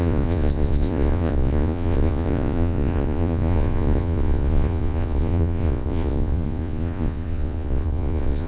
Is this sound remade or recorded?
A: remade